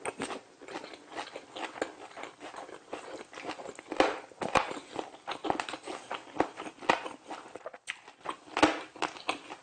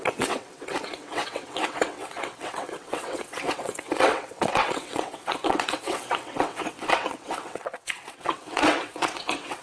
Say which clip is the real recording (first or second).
first